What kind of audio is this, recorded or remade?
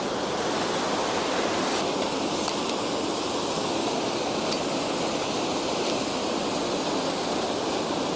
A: recorded